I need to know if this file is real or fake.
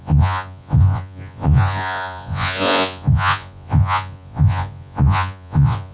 fake